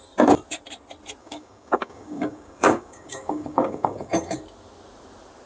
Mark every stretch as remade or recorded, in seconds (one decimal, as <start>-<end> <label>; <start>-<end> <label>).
0.0-1.2 recorded; 1.2-4.4 remade; 4.4-5.5 recorded